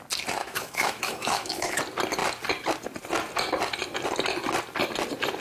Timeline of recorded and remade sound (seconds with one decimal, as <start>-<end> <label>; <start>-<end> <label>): 0.0-0.4 recorded; 0.4-1.8 remade; 1.8-5.4 recorded